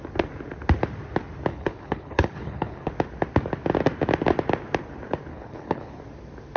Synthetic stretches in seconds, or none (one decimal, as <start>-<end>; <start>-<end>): 1.5-2.9; 5.3-6.0